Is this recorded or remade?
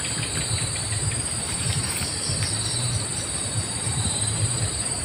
recorded